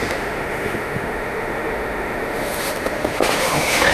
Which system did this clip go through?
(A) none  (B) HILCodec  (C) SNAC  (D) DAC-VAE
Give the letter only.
D